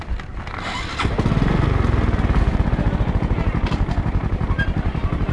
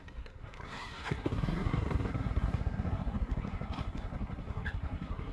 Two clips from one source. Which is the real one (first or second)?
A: first